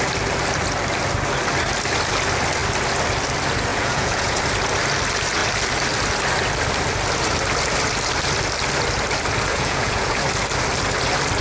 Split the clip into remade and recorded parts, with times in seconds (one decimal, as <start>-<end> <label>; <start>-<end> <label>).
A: 0.0-3.7 recorded; 3.7-4.4 remade; 4.4-9.5 recorded; 9.5-10.2 remade; 10.2-11.4 recorded